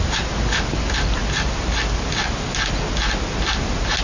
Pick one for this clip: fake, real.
real